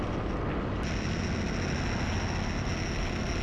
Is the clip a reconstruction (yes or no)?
no